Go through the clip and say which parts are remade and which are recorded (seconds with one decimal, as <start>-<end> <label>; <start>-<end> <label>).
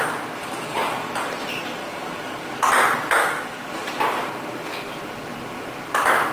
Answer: 0.0-0.4 recorded; 0.4-0.9 remade; 0.9-1.8 recorded; 1.8-2.6 remade; 2.6-3.2 recorded; 3.2-3.7 remade; 3.7-6.3 recorded